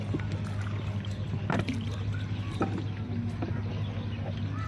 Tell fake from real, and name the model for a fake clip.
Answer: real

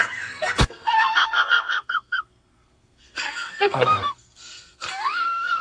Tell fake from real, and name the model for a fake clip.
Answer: fake, codec, SNAC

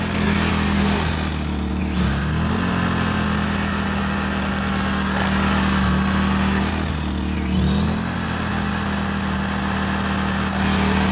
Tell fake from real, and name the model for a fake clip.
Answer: real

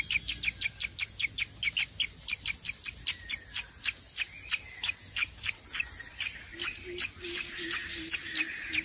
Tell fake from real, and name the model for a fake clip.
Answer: real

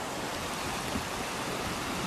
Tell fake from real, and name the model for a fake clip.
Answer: real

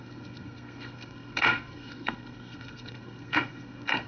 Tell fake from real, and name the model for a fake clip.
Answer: fake, codec, SNAC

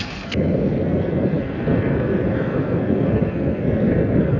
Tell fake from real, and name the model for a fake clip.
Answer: fake, codec, SNAC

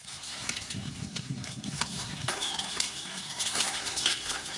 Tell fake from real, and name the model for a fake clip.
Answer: fake, codec, SNAC